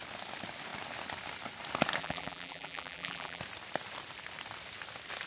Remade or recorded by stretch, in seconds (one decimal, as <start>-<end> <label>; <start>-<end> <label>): 0.0-2.0 recorded; 2.0-3.4 remade; 3.4-5.3 recorded

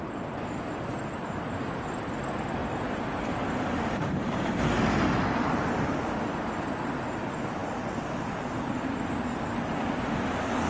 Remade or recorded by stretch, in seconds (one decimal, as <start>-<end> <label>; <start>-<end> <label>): 0.0-2.6 recorded; 2.6-4.6 remade; 4.6-10.7 recorded

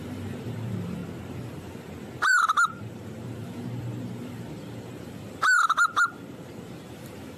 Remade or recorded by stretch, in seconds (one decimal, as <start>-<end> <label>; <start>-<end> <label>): 0.0-7.4 remade